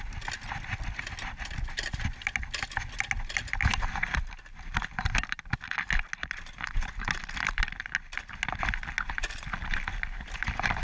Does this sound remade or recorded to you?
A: recorded